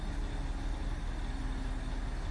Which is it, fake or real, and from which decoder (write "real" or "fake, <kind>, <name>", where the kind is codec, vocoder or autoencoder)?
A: real